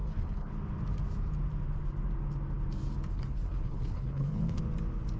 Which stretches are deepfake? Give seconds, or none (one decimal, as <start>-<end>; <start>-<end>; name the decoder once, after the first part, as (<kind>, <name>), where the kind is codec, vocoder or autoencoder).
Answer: 0.0-0.5 (codec, HILCodec); 3.1-4.6